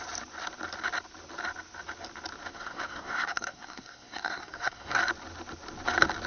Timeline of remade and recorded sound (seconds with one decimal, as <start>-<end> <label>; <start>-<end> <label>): 0.0-2.5 recorded; 2.5-5.0 remade; 5.0-6.3 recorded